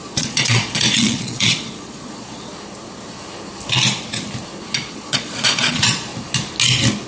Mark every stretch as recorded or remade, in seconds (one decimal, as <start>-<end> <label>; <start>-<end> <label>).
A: 0.0-2.5 remade; 2.5-4.9 recorded; 4.9-6.1 remade; 6.1-7.1 recorded